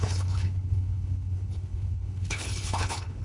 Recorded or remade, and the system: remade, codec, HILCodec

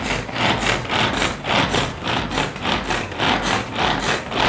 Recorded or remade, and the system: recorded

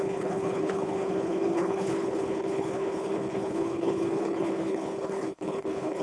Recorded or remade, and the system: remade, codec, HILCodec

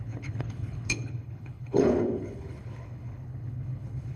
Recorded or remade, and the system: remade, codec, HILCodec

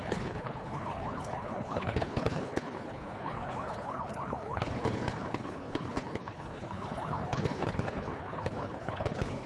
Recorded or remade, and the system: remade, codec, HILCodec